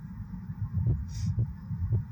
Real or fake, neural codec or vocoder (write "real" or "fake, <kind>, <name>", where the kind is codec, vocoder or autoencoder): real